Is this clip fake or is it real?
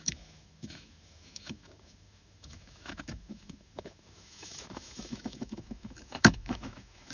fake